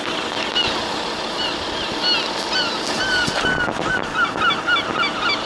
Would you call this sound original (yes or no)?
yes